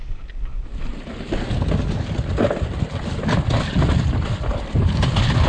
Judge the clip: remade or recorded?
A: recorded